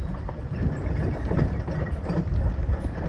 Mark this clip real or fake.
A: real